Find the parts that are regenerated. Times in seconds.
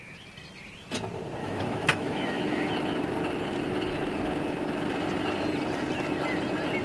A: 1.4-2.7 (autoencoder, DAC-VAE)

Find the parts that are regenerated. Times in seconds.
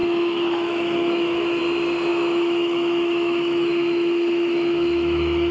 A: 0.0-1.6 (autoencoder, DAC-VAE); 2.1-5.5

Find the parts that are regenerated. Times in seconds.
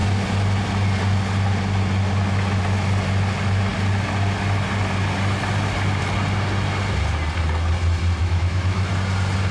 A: 8.2-8.9 (autoencoder, DAC-VAE)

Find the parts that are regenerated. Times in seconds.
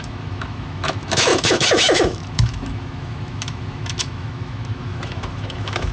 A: 0.0-5.9 (autoencoder, DAC-VAE)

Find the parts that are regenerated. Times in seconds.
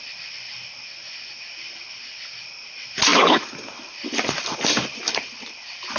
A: none